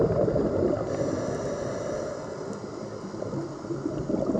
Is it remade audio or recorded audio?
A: recorded